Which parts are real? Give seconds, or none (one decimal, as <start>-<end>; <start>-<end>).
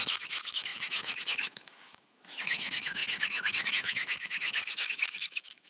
none